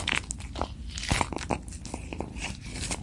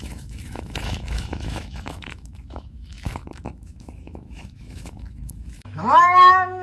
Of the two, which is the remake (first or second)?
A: second